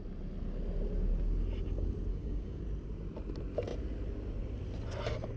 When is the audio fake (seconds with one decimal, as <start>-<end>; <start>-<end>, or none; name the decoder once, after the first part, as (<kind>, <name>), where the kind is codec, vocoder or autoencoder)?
2.1-2.6 (codec, DAC)